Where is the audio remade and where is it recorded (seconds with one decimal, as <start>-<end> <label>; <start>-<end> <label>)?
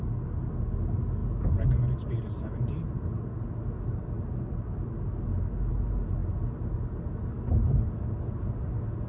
0.0-9.1 recorded